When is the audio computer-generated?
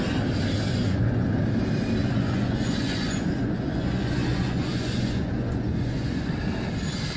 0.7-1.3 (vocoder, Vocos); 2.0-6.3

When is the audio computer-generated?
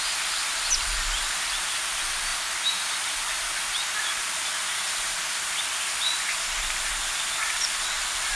none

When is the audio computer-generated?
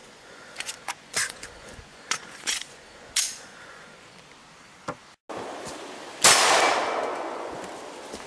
0.0-4.2 (vocoder, Vocos); 7.1-7.6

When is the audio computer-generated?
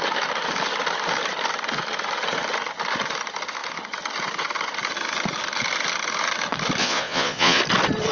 6.8-7.6 (vocoder, Vocos)